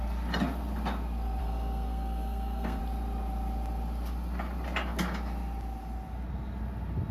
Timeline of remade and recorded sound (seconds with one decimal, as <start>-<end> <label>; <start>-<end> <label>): 0.0-1.4 recorded; 1.4-2.8 remade; 2.8-7.1 recorded